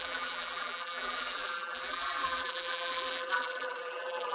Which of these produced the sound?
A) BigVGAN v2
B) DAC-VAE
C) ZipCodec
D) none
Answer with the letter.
A